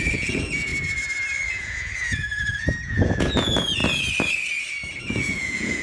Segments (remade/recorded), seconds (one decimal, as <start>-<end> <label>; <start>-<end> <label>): 0.0-0.7 remade; 0.7-1.5 recorded; 1.5-3.8 remade; 3.8-5.0 recorded; 5.0-5.8 remade